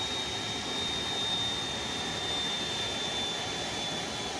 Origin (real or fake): real